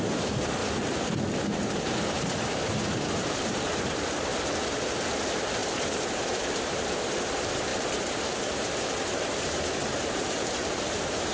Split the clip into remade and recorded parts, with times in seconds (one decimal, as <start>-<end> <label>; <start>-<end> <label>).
0.0-0.6 remade; 0.6-1.8 recorded; 1.8-4.3 remade; 4.3-5.1 recorded; 5.1-11.3 remade